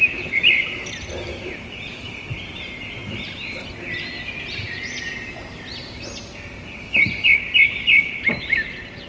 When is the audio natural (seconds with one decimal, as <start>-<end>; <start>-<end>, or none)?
none